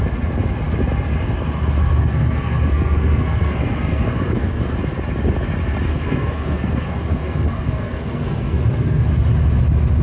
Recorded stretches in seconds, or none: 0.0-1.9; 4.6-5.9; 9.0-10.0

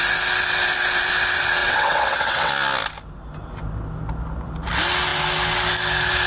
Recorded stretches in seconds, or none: 0.0-1.6; 2.5-6.3